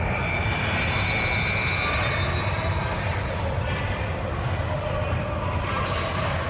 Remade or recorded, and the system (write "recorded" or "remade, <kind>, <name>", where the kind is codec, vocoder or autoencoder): recorded